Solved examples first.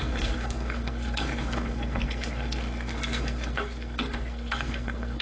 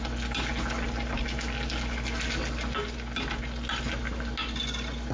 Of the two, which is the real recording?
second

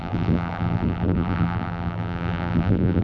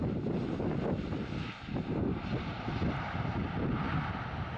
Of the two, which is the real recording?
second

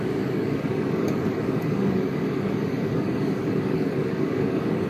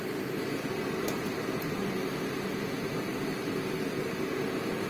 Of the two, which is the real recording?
second